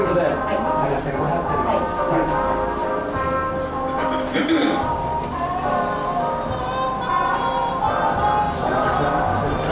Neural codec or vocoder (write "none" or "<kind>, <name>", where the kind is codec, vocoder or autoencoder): vocoder, BigVGAN v2